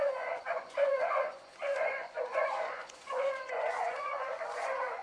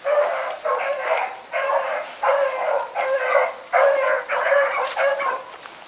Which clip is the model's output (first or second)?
first